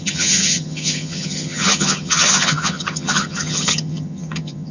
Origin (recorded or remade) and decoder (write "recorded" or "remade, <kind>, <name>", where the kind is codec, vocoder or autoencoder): remade, vocoder, HiFi-GAN